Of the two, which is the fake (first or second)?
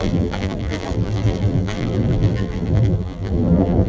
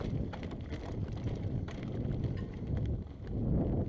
first